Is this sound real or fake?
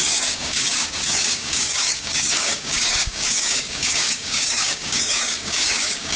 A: fake